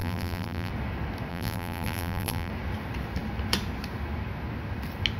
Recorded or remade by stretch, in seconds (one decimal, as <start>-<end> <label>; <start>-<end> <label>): 0.0-0.7 remade; 0.7-1.3 recorded; 1.3-2.5 remade; 2.5-5.2 recorded